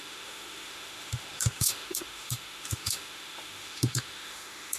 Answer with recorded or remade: remade